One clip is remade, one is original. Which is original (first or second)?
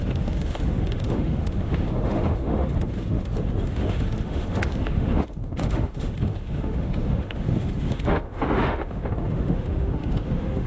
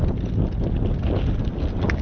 second